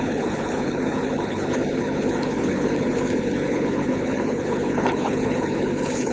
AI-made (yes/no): yes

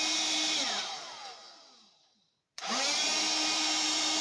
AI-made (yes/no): yes